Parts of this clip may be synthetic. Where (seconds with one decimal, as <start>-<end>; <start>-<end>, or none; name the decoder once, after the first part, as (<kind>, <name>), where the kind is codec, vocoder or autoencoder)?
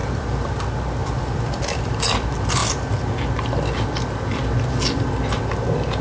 0.0-0.5 (vocoder, BigVGAN v2); 1.0-2.0